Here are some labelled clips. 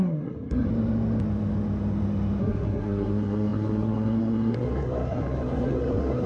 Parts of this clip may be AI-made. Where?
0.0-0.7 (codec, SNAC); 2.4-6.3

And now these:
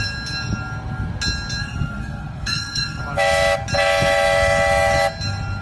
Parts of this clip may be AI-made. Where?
1.6-3.0 (codec, SNAC)

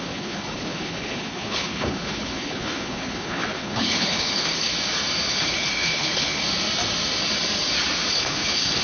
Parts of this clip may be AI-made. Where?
0.0-4.7 (codec, HILCodec); 5.3-6.4; 8.1-8.8

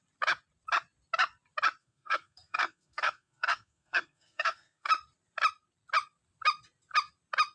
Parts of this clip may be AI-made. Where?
1.8-4.9 (codec, SNAC)

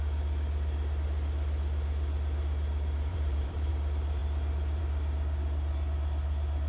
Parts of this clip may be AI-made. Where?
3.1-3.7 (vocoder, BigVGAN v2)